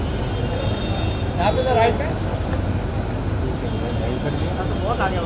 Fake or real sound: real